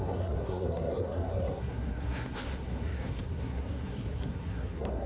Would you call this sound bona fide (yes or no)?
no